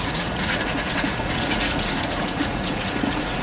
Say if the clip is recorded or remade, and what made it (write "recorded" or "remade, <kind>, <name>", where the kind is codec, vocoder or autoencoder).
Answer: remade, vocoder, Vocos